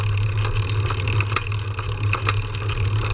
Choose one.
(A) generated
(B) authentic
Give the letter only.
B